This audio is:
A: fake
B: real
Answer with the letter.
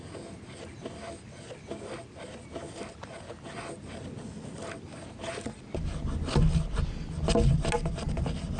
B